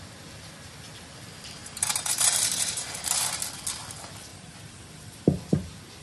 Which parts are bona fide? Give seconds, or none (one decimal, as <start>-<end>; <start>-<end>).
0.0-1.6; 3.4-4.3; 4.9-6.0